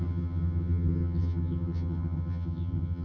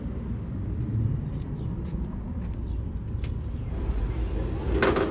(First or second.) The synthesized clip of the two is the first